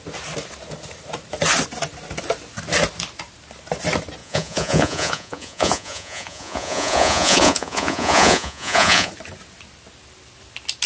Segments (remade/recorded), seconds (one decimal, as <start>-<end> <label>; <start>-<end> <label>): 0.0-4.2 recorded; 4.2-9.1 remade; 9.1-10.9 recorded